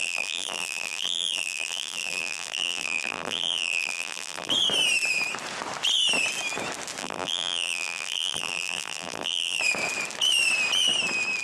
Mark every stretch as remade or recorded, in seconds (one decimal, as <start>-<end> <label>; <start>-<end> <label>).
0.0-4.5 remade; 4.5-7.0 recorded; 7.0-9.6 remade; 9.6-11.4 recorded